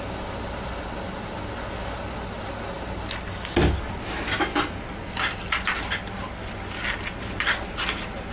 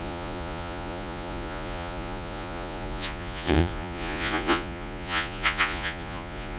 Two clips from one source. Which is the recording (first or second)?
first